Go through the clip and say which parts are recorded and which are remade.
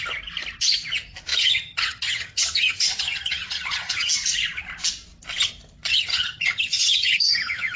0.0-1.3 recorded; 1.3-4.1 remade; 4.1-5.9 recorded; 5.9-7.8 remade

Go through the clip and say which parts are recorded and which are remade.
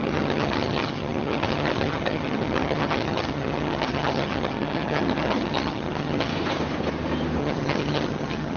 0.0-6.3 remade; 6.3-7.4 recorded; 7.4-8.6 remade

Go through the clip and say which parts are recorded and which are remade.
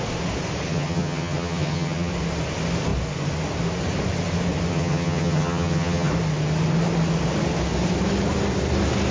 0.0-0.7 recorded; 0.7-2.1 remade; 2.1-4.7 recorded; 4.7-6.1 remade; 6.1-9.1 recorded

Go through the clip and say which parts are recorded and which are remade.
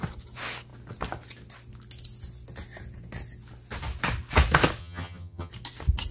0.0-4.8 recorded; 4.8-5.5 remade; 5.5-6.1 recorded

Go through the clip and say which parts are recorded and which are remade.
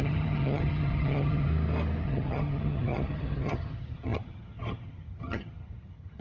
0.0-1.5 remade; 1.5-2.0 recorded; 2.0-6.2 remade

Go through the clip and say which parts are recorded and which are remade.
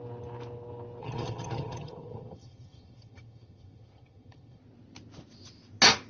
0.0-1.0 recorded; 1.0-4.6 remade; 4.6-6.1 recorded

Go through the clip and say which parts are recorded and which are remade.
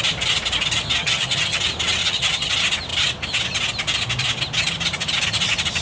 0.0-1.0 recorded; 1.0-1.6 remade; 1.6-2.0 recorded; 2.0-2.5 remade; 2.5-5.8 recorded